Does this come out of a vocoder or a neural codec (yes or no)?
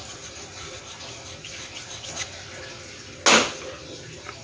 no